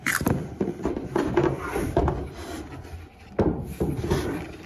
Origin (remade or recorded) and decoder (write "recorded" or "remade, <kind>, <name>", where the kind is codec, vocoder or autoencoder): remade, vocoder, BigVGAN v2